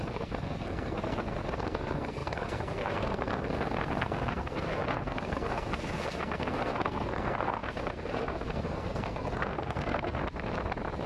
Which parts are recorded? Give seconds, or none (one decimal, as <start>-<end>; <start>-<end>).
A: 10.2-11.1